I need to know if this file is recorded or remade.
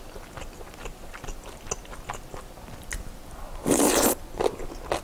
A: recorded